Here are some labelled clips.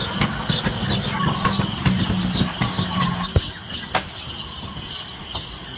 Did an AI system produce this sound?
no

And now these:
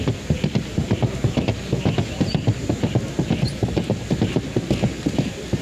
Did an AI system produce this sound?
yes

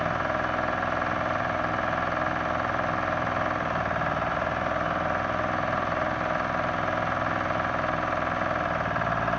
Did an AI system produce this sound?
no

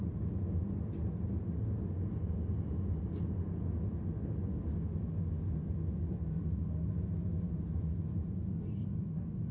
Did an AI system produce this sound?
no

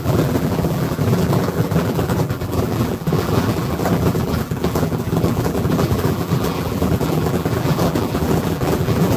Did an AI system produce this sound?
yes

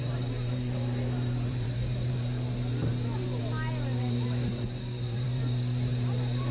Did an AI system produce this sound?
yes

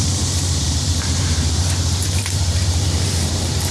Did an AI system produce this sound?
yes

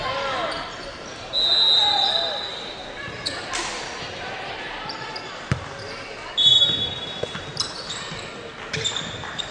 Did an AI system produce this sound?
no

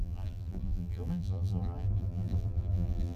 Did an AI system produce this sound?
yes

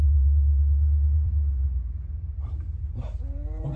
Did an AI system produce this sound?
yes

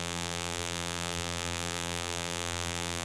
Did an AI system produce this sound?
yes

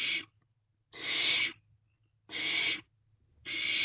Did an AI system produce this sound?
no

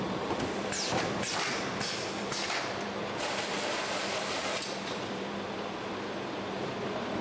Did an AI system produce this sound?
yes